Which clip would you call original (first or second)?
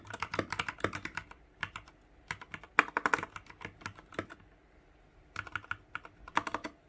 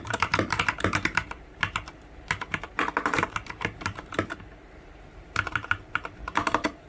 first